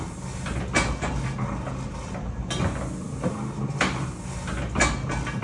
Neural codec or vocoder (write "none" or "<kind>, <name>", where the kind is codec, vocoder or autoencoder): none